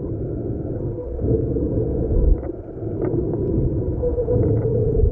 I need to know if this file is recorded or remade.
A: recorded